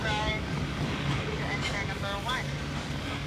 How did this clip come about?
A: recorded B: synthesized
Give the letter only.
B